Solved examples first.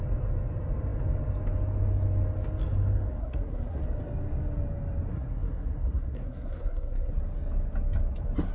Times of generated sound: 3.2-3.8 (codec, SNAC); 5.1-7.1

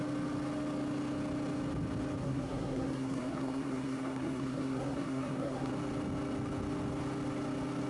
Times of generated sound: 2.2-5.7 (codec, SNAC)

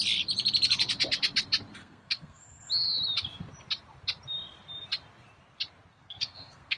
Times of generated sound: 1.8-2.7 (codec, SNAC); 5.9-6.8

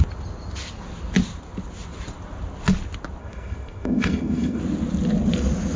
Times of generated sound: 3.2-4.6 (codec, SNAC)

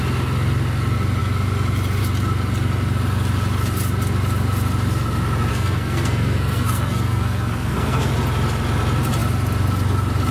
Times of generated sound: 5.5-8.1 (codec, SNAC)